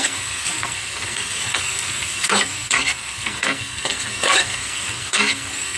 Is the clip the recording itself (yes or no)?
no